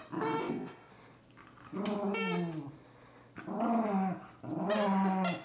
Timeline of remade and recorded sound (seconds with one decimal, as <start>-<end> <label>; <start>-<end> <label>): 0.0-0.4 recorded; 0.4-0.9 remade; 0.9-5.4 recorded

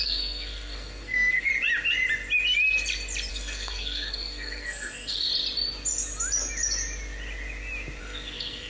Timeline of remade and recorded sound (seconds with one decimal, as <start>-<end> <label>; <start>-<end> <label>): 0.0-1.5 remade; 1.5-3.3 recorded; 3.3-5.3 remade; 5.3-8.0 recorded; 8.0-8.7 remade